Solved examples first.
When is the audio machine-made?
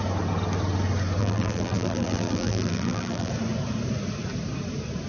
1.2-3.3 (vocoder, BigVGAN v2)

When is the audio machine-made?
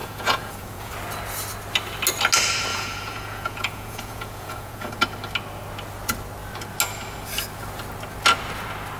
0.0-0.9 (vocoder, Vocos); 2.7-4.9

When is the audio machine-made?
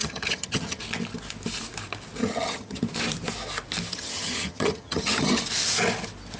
0.0-0.8 (vocoder, HiFi-GAN); 2.2-2.8; 3.9-5.4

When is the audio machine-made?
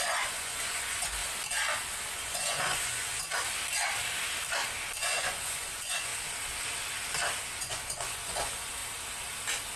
0.0-1.2 (vocoder, Vocos); 2.1-3.3; 5.0-6.1; 7.6-8.8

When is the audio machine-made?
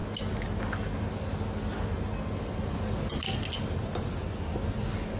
none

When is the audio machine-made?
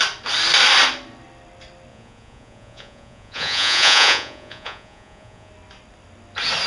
1.9-5.5 (vocoder, Vocos)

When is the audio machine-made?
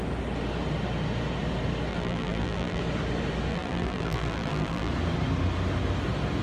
1.9-2.8 (vocoder, BigVGAN v2); 3.5-4.9